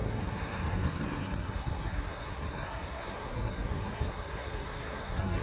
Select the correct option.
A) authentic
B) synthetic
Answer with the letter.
B